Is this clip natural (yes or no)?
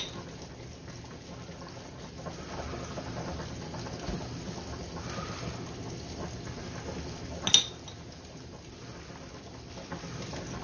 yes